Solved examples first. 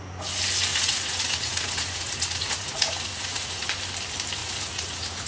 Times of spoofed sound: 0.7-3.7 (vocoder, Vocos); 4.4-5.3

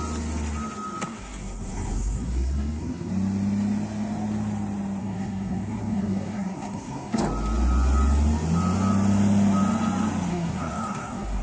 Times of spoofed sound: 1.1-3.1 (codec, SNAC); 5.0-7.2; 10.3-11.4

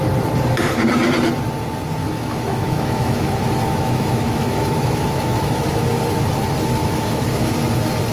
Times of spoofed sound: 2.0-6.0 (autoencoder, DAC-VAE); 6.8-7.5

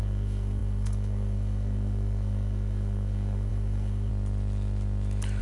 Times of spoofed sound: 0.0-4.1 (codec, SNAC)

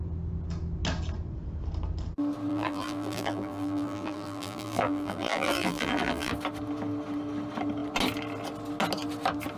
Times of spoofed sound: 2.5-6.3 (vocoder, BigVGAN v2)

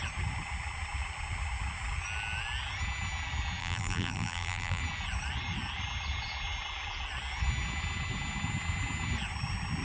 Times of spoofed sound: 3.6-4.8 (vocoder, BigVGAN v2)

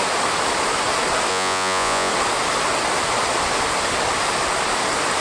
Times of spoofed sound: 1.3-2.1 (vocoder, Vocos)